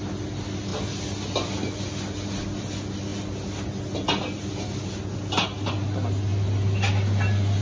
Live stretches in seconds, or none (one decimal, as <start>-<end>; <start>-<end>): 0.0-7.6